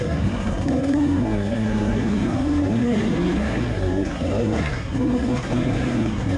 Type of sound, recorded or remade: remade